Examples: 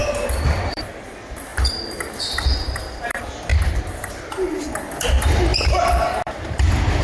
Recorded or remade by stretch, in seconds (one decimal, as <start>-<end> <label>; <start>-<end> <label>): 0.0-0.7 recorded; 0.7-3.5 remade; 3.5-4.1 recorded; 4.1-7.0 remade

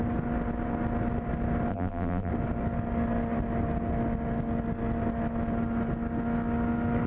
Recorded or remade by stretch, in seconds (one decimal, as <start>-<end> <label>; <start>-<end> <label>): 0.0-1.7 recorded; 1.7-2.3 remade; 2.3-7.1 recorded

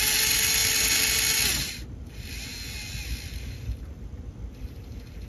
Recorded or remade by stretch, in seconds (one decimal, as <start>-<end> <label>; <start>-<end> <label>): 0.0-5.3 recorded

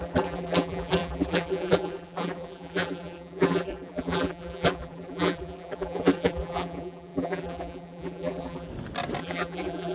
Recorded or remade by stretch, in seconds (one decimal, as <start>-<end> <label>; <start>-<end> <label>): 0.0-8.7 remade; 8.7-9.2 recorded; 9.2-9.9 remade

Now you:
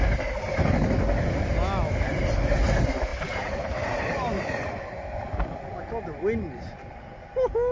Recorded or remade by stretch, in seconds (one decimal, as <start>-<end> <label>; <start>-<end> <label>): 0.0-3.1 recorded; 3.1-4.4 remade; 4.4-7.7 recorded

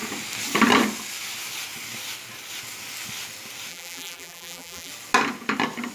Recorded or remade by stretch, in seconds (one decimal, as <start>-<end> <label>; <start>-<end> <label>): 0.0-3.7 recorded; 3.7-4.9 remade; 4.9-5.9 recorded